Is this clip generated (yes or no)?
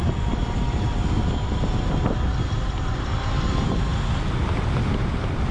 no